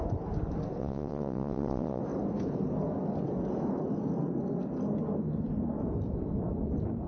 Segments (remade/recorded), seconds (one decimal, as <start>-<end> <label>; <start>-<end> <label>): 0.0-0.8 recorded; 0.8-2.0 remade; 2.0-7.1 recorded